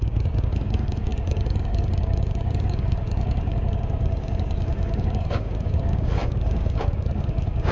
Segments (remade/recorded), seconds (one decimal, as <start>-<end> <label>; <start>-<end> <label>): 0.0-7.7 remade